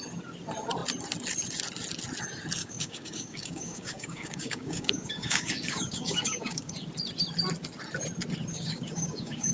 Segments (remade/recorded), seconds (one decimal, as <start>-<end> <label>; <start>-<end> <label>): 0.0-2.6 recorded; 2.6-6.7 remade; 6.7-8.5 recorded; 8.5-9.5 remade